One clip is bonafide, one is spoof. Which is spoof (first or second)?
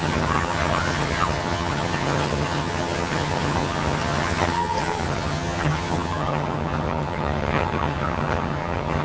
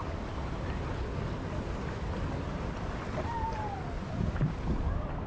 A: first